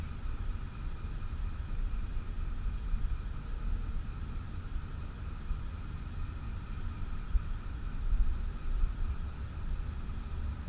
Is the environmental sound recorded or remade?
recorded